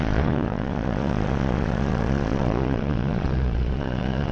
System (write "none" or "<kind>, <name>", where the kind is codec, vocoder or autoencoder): vocoder, Vocos